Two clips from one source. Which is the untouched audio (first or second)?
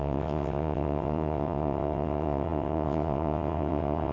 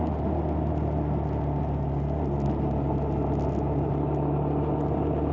second